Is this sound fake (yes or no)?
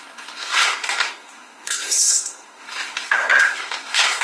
yes